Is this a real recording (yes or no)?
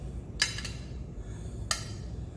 yes